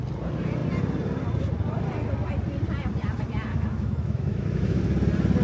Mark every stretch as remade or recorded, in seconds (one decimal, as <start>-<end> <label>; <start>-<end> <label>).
0.0-3.5 recorded; 3.5-4.8 remade; 4.8-5.4 recorded